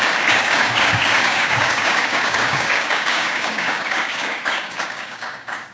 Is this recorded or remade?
remade